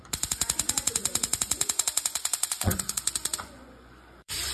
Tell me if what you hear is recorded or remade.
remade